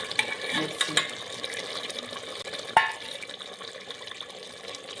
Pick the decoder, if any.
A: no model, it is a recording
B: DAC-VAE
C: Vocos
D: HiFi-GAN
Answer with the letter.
A